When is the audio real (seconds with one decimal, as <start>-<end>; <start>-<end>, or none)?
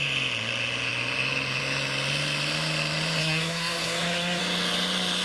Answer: 0.0-3.2; 4.4-5.2